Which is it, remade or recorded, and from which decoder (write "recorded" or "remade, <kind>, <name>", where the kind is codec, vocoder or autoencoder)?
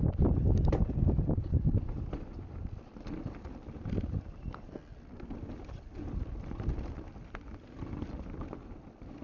remade, vocoder, BigVGAN v2